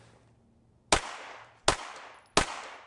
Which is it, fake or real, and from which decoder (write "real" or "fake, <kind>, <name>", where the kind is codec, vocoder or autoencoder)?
real